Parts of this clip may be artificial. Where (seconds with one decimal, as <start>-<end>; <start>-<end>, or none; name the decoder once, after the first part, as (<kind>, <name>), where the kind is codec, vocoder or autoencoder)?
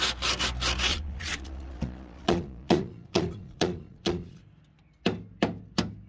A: 0.9-4.4 (vocoder, Vocos)